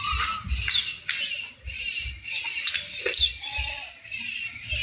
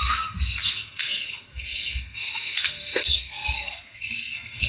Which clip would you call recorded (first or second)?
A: first